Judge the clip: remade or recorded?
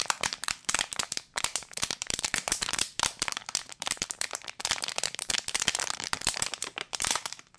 remade